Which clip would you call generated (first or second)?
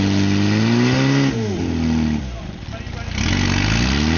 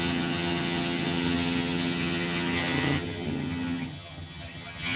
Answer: second